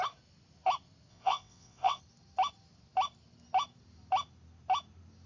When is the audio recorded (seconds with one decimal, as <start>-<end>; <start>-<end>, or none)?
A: 0.0-1.1; 2.0-5.3